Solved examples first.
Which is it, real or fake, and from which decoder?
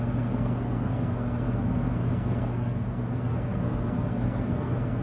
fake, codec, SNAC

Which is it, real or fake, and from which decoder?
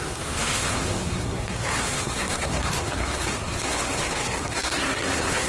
fake, codec, SNAC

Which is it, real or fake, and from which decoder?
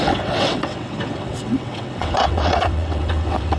fake, vocoder, WaveNeXt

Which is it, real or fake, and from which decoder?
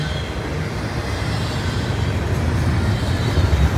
real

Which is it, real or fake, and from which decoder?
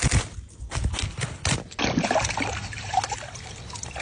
real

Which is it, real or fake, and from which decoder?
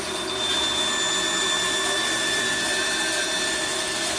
real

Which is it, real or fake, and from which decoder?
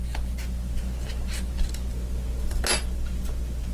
real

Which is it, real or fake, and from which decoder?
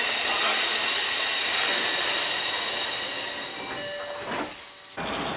real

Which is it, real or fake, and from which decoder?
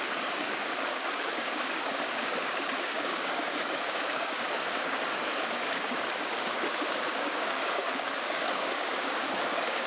fake, codec, DAC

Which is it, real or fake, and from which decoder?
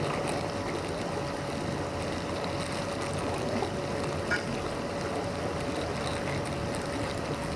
real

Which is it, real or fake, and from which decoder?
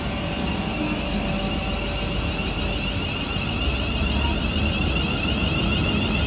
real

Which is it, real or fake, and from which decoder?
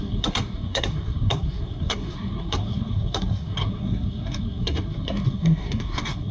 fake, codec, SNAC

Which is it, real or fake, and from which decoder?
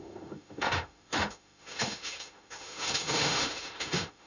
fake, autoencoder, DAC-VAE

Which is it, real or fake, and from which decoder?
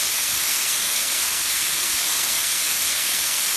fake, codec, SNAC